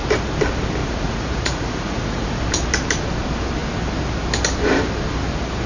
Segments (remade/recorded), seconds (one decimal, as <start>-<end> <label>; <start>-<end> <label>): 0.0-0.8 recorded; 0.8-2.4 remade; 2.4-5.7 recorded

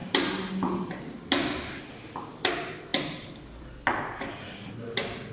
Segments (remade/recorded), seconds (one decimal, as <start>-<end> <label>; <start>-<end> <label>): 0.0-5.3 recorded

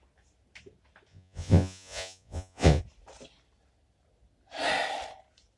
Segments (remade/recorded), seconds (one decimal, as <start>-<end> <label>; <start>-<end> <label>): 0.0-1.1 recorded; 1.1-2.8 remade; 2.8-5.6 recorded

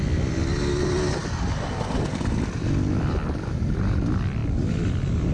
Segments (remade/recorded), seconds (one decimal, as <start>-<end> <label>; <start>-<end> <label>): 0.0-5.3 recorded